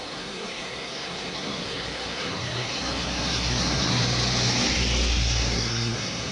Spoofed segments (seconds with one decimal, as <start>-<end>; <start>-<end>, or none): 0.0-4.0; 5.1-6.3